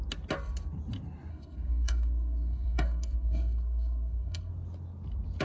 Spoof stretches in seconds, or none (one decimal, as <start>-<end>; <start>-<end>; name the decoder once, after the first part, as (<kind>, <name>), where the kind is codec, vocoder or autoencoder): 1.3-4.5 (codec, SNAC)